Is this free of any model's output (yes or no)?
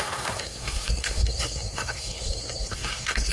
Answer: no